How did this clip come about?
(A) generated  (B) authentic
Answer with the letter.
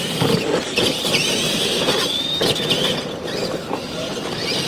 A